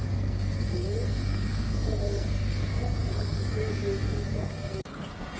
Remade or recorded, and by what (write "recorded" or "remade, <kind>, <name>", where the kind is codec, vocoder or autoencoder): remade, codec, SNAC